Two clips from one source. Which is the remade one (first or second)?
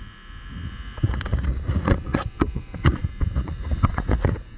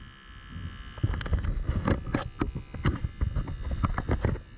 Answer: first